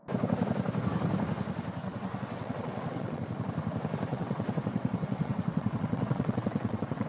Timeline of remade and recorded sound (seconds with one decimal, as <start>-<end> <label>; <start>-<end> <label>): 0.0-1.8 recorded; 1.8-3.2 remade; 3.2-4.1 recorded; 4.1-7.1 remade